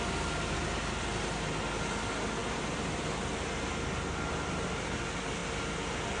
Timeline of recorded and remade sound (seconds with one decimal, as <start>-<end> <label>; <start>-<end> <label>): 0.0-6.2 recorded